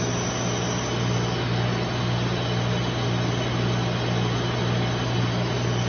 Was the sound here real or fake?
real